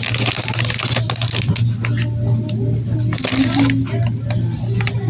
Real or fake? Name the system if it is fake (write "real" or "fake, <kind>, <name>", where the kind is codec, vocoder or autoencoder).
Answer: real